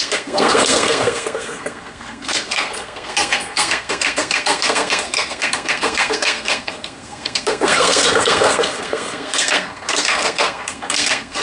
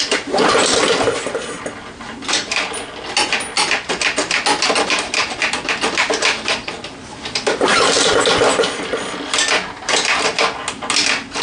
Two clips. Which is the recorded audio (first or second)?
second